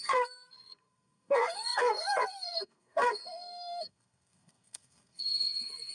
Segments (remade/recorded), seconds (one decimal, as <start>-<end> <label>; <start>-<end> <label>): 0.0-5.9 remade